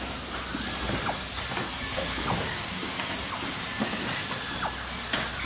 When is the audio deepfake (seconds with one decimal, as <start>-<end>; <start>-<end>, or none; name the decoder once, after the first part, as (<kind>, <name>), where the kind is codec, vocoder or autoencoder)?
1.9-3.1 (codec, DAC)